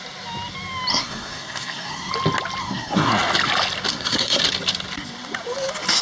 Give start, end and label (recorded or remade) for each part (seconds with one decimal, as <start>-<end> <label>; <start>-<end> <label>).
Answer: 0.0-0.9 recorded; 0.9-2.1 remade; 2.1-2.6 recorded; 2.6-3.1 remade; 3.1-3.9 recorded; 3.9-4.4 remade; 4.4-6.0 recorded